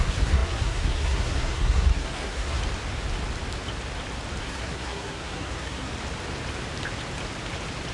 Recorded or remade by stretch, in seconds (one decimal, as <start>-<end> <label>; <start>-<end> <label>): 0.0-2.6 remade; 2.6-4.4 recorded; 4.4-5.9 remade; 5.9-7.9 recorded